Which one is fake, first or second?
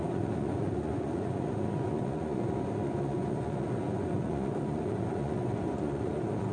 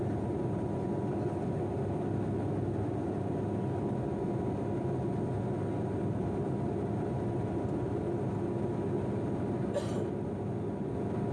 first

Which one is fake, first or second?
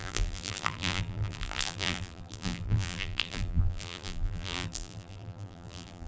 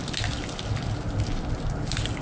first